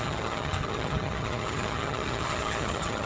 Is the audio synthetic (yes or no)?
yes